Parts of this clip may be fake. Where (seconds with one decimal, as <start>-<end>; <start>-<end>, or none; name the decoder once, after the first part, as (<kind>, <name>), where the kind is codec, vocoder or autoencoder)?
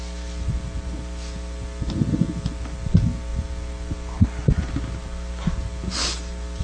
none